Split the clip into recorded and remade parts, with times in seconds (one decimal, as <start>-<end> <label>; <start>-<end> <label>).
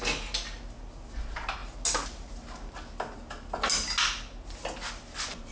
0.0-5.5 recorded